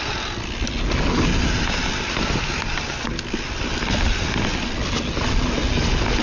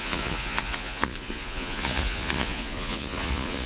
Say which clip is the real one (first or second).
first